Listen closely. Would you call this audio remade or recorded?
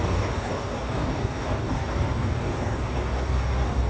remade